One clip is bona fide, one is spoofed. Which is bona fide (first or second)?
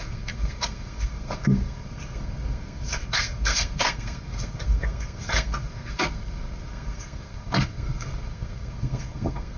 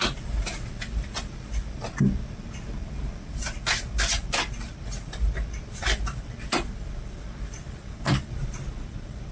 second